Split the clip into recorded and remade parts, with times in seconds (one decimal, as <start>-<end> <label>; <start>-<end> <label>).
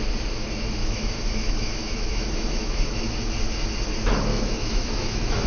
0.0-0.8 recorded; 0.8-3.1 remade; 3.1-4.3 recorded; 4.3-5.5 remade